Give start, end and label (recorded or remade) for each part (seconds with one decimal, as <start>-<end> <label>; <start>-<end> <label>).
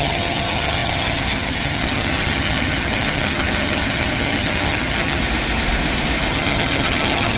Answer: 0.0-5.2 remade; 5.2-6.3 recorded; 6.3-7.4 remade